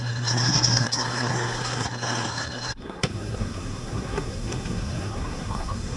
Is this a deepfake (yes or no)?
yes